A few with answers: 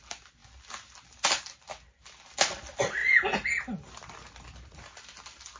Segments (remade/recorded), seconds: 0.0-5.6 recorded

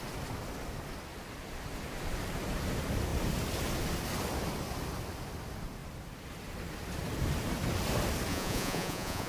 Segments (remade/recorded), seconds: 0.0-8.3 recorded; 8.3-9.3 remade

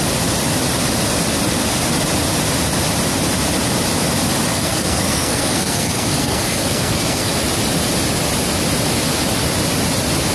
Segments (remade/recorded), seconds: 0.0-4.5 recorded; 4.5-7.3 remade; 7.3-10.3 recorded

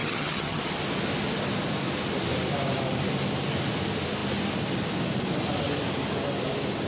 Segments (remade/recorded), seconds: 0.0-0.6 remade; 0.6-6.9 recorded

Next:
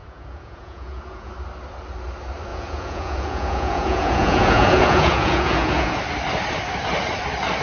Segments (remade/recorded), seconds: 0.0-1.3 remade; 1.3-2.5 recorded; 2.5-6.0 remade; 6.0-7.6 recorded

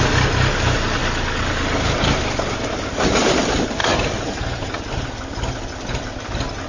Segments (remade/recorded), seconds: 0.0-3.8 recorded; 3.8-6.7 remade

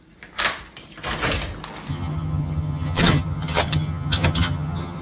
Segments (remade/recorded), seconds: 0.0-1.9 recorded; 1.9-5.0 remade

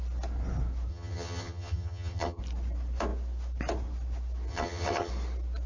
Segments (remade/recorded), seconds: 0.0-0.9 recorded; 0.9-2.4 remade; 2.4-4.5 recorded; 4.5-5.1 remade; 5.1-5.7 recorded